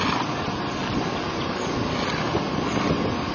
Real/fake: real